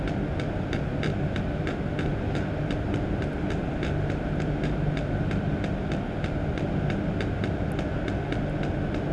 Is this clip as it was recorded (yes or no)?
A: yes